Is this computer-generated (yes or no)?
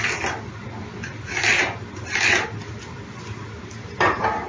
no